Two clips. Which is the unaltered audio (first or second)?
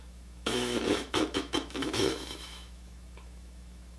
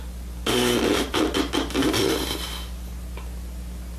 second